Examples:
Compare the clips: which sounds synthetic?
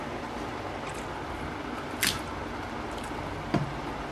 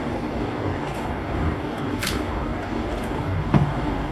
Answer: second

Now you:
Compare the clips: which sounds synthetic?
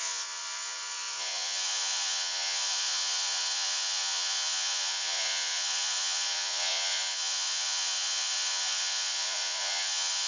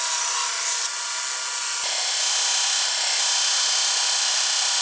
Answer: first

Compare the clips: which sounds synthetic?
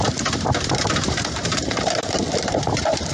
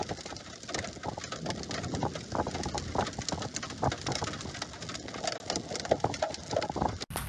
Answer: first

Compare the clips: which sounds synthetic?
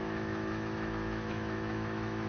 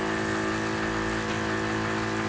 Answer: first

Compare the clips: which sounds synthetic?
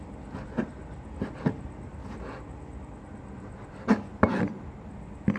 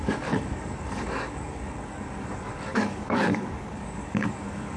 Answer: second